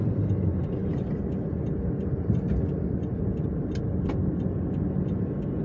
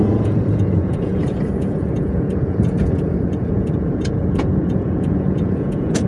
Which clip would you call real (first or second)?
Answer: first